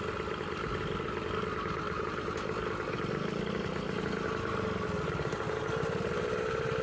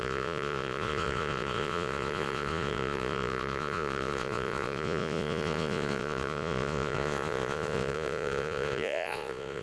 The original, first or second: first